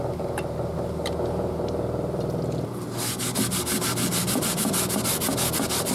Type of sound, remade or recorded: recorded